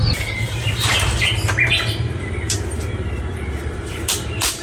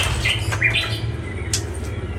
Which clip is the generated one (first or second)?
first